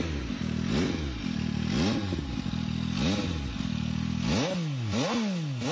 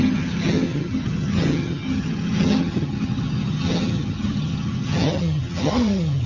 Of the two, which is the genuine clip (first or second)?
first